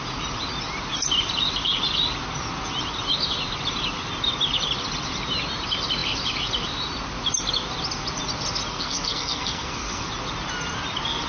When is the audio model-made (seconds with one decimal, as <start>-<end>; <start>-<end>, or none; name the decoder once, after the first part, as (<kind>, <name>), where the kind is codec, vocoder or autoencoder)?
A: 8.7-10.1 (codec, SNAC)